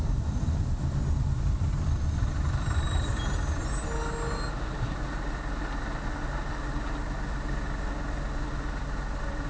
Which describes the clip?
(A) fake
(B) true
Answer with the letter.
B